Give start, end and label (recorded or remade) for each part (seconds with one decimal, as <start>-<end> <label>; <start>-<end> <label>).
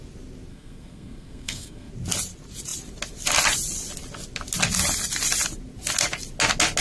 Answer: 0.0-0.5 recorded; 0.5-1.9 remade; 1.9-6.8 recorded